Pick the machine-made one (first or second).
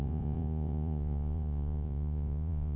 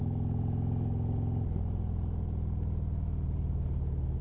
first